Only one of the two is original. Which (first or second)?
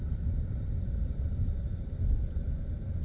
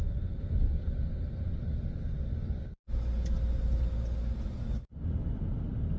second